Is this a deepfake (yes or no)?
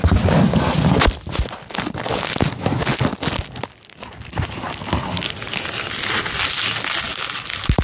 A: no